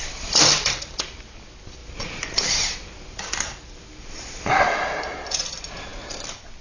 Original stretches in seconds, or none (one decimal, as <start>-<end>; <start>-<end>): 0.0-1.8; 4.5-6.6